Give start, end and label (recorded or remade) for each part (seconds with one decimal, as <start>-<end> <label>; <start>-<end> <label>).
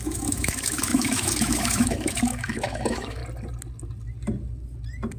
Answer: 0.0-3.2 remade; 3.2-5.2 recorded